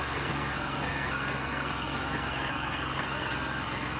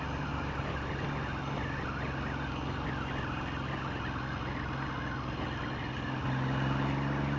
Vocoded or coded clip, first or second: first